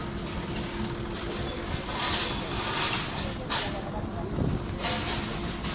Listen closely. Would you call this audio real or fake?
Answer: real